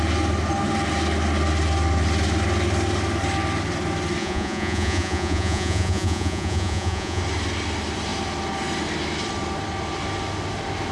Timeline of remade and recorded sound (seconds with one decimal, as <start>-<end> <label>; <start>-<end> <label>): 0.0-4.2 recorded; 4.2-7.2 remade; 7.2-10.9 recorded